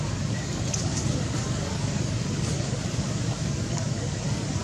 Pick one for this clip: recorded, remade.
remade